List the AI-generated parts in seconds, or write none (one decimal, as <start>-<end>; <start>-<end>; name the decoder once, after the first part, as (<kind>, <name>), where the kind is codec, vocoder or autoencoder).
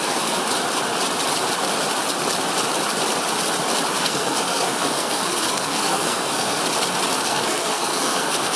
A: 0.0-0.4 (codec, SNAC); 4.0-6.6; 7.2-8.6